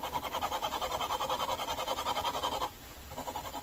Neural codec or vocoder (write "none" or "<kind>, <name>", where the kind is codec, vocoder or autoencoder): none